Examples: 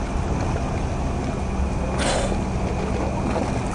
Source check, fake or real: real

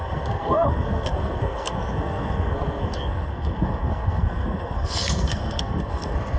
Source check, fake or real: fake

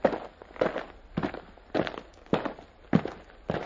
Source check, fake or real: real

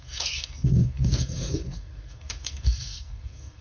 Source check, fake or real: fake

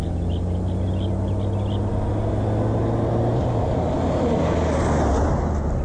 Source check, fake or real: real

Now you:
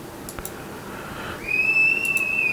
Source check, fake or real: real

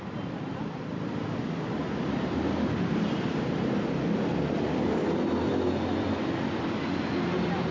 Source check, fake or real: real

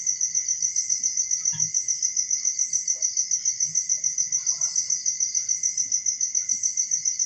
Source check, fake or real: real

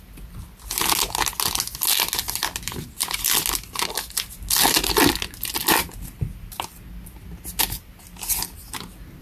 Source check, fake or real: real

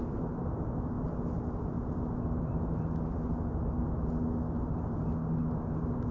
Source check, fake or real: real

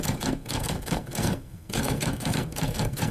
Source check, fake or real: fake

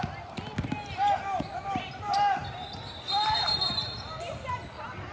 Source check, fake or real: real